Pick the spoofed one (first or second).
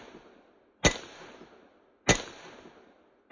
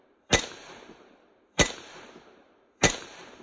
second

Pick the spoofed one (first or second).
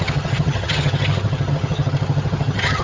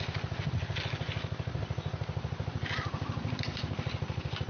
first